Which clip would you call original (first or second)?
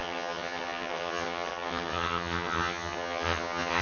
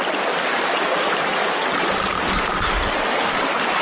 second